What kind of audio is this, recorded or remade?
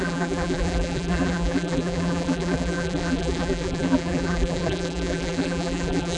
remade